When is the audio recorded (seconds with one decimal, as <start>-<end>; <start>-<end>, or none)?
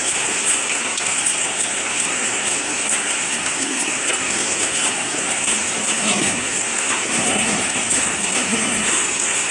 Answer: none